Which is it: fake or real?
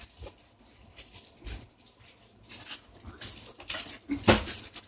real